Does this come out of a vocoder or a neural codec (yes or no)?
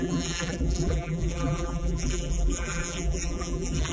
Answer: yes